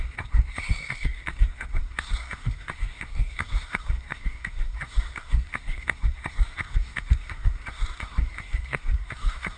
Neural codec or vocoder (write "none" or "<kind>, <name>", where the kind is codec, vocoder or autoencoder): codec, SNAC